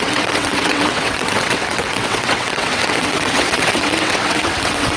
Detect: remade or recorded remade